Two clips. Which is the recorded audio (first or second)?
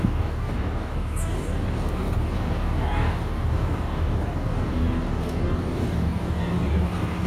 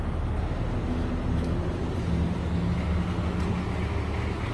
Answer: second